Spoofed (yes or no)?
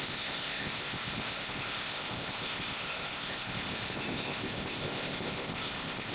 yes